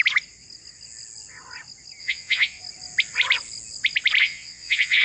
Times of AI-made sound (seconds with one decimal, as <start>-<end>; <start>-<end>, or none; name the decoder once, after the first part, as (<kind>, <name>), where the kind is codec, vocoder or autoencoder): 2.0-2.6 (vocoder, WaveNeXt); 4.2-5.0

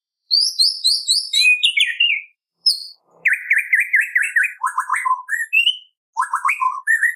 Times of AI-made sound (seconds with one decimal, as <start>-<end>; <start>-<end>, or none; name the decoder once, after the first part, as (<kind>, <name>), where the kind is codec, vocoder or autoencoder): 0.0-4.9 (vocoder, BigVGAN v2); 6.7-7.2

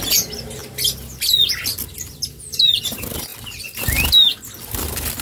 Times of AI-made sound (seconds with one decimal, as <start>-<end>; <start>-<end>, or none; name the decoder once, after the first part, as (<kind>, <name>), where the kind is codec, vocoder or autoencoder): none

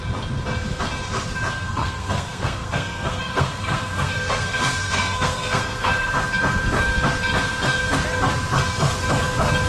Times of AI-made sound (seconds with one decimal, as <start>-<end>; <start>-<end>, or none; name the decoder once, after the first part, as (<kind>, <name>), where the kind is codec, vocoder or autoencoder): 1.5-6.2 (codec, SNAC)

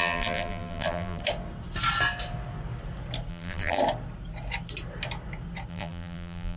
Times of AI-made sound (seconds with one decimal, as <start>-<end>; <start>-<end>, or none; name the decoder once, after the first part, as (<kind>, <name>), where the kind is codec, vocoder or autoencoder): 0.0-1.2 (vocoder, BigVGAN v2); 3.3-3.8; 5.7-6.6

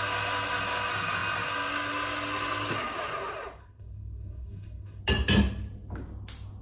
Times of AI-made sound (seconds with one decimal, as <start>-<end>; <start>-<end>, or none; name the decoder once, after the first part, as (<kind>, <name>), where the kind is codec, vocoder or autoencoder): 3.6-5.0 (codec, SNAC)

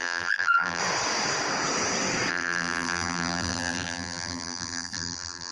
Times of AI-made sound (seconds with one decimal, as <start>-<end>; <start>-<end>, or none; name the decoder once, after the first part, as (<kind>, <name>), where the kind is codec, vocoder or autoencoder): 0.0-0.8 (vocoder, BigVGAN v2); 2.3-5.5

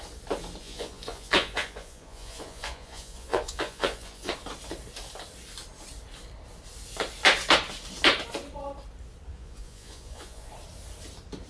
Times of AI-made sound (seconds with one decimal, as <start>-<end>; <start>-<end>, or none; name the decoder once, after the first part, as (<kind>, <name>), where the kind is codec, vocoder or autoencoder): 0.6-4.3 (vocoder, Vocos); 9.3-10.5